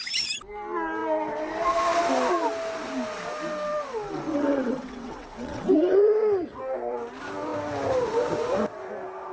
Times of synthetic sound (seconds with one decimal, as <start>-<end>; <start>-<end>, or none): 4.3-6.6